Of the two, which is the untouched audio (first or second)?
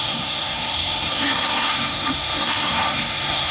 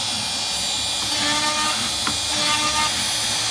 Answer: second